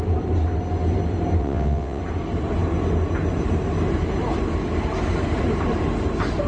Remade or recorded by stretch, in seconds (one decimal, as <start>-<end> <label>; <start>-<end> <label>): 0.0-1.4 recorded; 1.4-2.0 remade; 2.0-6.5 recorded